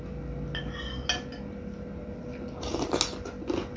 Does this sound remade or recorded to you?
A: recorded